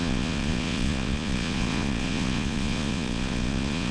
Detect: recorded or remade remade